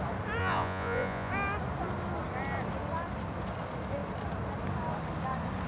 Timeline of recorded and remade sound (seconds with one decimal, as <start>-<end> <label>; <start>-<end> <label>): 0.0-0.4 recorded; 0.4-1.3 remade; 1.3-5.7 recorded